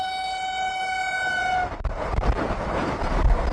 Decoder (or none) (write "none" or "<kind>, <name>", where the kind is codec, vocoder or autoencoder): none